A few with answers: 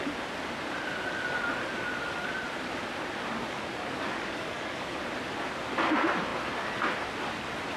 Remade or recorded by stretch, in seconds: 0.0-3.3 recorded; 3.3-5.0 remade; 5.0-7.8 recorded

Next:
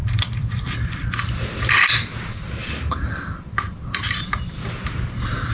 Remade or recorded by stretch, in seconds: 0.0-2.1 remade; 2.1-2.6 recorded; 2.6-4.4 remade; 4.4-5.5 recorded

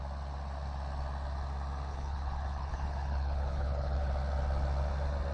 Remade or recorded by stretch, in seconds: 0.0-1.9 recorded; 1.9-4.1 remade; 4.1-5.3 recorded

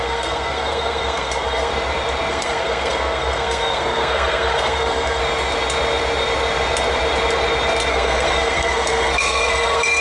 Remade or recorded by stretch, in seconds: 0.0-1.7 remade; 1.7-2.3 recorded; 2.3-5.2 remade; 5.2-7.9 recorded; 7.9-10.0 remade

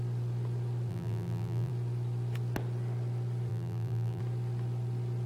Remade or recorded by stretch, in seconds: 0.0-0.9 recorded; 0.9-1.7 remade; 1.7-3.5 recorded; 3.5-4.2 remade; 4.2-5.3 recorded

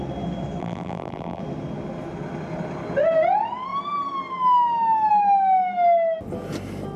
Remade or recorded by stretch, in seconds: 0.0-0.6 recorded; 0.6-1.4 remade; 1.4-7.0 recorded

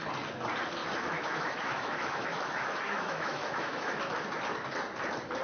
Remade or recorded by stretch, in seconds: 0.0-0.8 recorded; 0.8-4.0 remade; 4.0-5.4 recorded